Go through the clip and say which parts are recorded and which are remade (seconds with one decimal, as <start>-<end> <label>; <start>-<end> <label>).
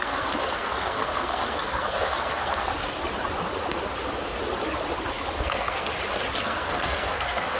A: 0.0-2.7 remade; 2.7-5.4 recorded; 5.4-5.9 remade; 5.9-6.4 recorded; 6.4-7.6 remade